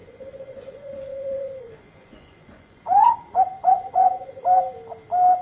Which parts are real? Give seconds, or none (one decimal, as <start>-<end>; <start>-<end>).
3.2-3.6; 4.3-5.4